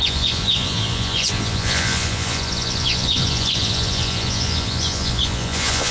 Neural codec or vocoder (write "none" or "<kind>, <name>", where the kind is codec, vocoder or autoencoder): vocoder, Vocos